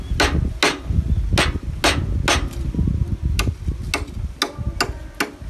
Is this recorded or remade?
recorded